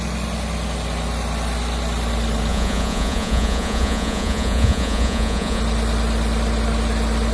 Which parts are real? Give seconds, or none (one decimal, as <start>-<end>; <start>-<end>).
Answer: 0.0-2.5; 5.6-7.3